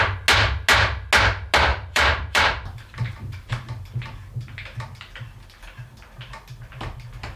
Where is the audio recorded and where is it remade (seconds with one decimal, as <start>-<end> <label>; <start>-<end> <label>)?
0.0-1.7 recorded; 1.7-3.5 remade; 3.5-7.4 recorded